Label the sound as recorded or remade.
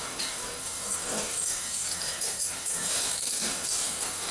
remade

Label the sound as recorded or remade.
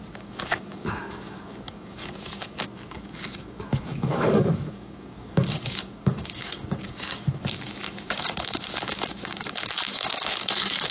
remade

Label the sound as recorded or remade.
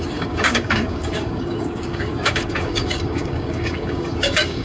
remade